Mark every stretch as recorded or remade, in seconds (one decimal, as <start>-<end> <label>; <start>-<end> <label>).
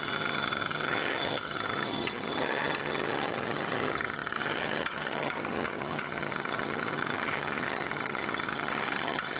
0.0-9.4 remade